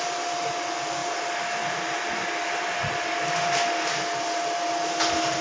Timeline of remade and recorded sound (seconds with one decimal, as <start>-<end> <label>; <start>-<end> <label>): 0.0-5.4 recorded